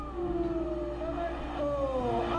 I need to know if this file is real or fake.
real